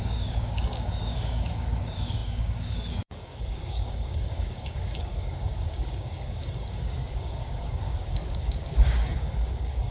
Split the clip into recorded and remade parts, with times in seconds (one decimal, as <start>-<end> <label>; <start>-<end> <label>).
0.0-9.9 remade